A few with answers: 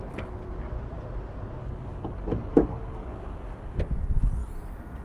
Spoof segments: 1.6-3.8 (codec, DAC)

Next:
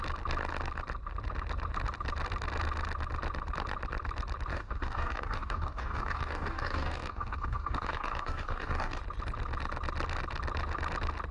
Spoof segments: 4.5-9.0 (codec, DAC)